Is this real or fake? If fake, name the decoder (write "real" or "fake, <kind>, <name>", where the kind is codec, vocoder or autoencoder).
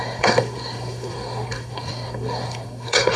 fake, codec, SNAC